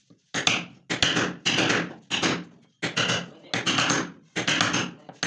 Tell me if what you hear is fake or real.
real